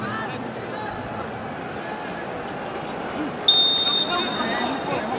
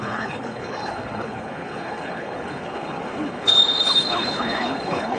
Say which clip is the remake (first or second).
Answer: second